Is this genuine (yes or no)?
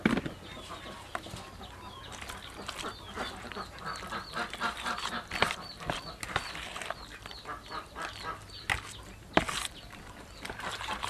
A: yes